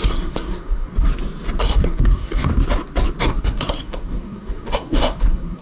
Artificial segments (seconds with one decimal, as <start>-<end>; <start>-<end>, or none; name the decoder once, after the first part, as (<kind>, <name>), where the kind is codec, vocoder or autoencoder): 0.0-1.1 (codec, SNAC); 1.6-2.5; 3.2-5.6